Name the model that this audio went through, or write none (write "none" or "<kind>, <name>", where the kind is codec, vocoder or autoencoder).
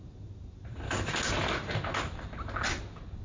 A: none